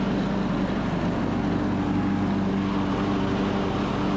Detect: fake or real real